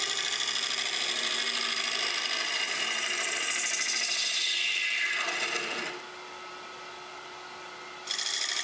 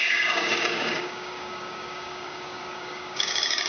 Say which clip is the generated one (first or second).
second